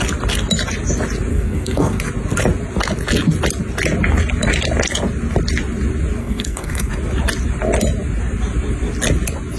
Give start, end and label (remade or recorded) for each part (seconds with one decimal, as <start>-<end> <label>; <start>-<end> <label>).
0.0-1.3 recorded; 1.3-2.0 remade; 2.0-6.2 recorded; 6.2-6.9 remade; 6.9-9.6 recorded